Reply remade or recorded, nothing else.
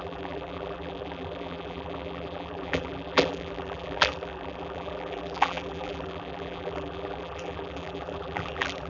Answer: remade